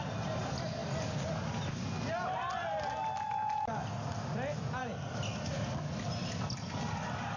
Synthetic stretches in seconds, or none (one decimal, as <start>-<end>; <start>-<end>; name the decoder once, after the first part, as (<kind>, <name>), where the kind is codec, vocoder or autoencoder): none